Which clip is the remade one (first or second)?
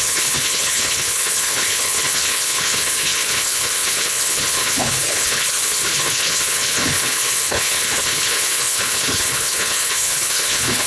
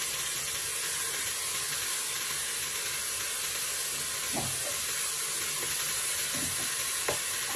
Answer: first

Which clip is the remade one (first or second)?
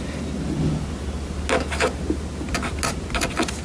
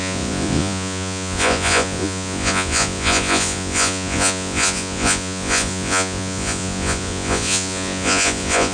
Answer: second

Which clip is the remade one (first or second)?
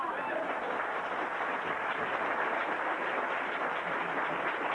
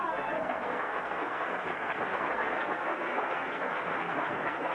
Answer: second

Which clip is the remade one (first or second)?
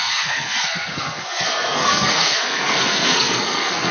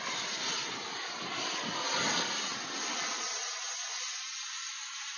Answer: first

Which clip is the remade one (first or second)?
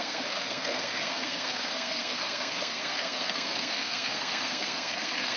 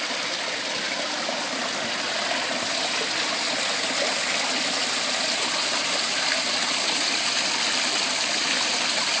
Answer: first